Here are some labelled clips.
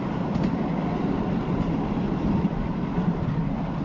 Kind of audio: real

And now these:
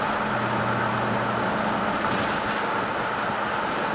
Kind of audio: real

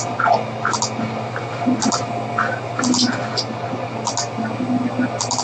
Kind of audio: real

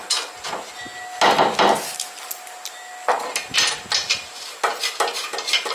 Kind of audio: real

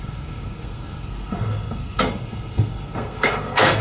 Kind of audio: fake